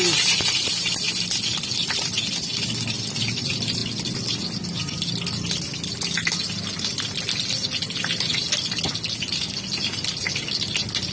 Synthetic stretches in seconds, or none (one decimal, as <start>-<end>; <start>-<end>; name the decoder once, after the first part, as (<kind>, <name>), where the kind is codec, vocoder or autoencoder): none